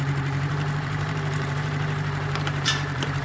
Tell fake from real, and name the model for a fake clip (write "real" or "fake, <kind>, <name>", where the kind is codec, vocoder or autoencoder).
fake, vocoder, BigVGAN v2